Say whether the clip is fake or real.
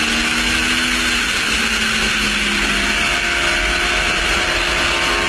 real